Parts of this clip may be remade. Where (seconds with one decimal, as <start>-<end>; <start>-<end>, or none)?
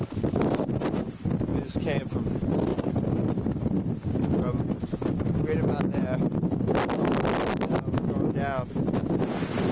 none